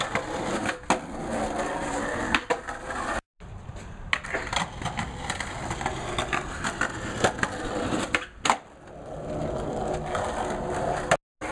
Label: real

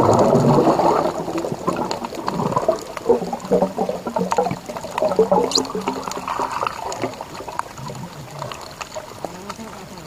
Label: real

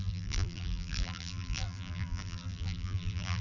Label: fake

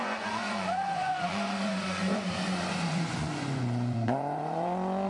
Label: fake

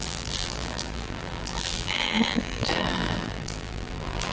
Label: fake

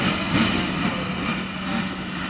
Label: real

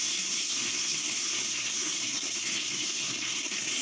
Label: fake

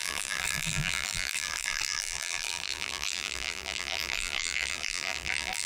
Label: fake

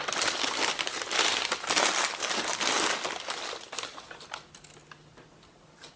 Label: real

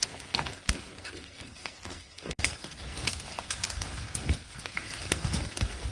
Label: fake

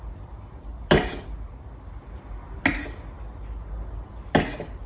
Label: real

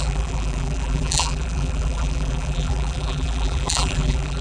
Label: fake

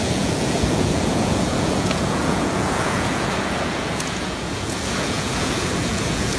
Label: fake